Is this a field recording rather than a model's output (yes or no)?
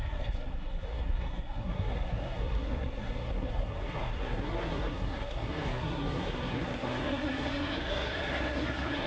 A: no